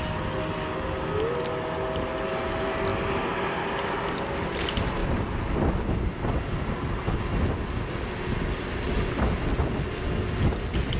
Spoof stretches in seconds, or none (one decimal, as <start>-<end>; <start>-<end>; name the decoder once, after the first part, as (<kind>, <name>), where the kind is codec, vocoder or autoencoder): none